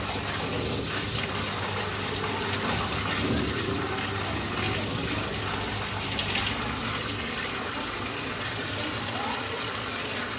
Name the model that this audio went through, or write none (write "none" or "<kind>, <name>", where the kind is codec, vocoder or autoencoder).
none